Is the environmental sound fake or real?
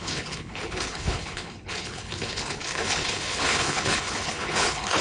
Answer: fake